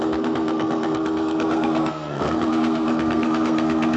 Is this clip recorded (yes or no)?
no